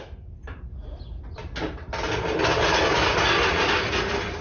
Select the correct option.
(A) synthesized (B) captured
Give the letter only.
B